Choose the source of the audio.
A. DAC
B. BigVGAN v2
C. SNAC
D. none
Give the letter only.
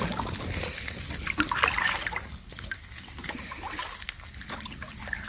D